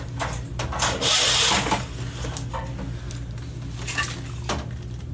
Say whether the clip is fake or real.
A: real